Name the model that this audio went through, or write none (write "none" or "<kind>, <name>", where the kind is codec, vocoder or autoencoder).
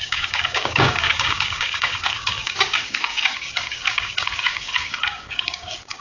codec, DAC